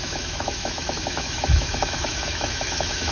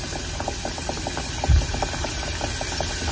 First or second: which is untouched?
second